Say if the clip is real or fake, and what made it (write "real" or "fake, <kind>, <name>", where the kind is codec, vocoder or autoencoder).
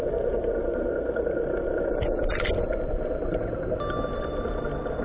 real